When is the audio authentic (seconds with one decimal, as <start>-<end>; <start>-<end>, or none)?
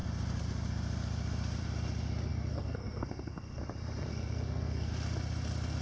0.0-2.3; 3.6-4.1; 4.9-5.8